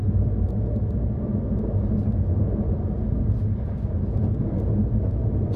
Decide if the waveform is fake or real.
real